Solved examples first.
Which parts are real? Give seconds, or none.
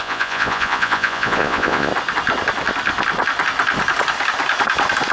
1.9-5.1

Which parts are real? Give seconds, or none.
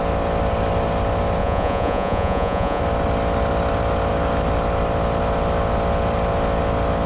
0.0-1.4; 2.8-7.1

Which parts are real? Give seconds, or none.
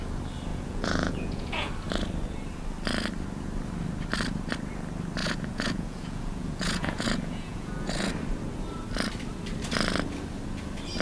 0.0-0.5; 1.7-5.2; 8.1-11.0